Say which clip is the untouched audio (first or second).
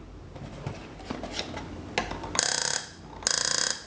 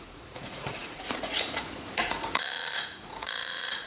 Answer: first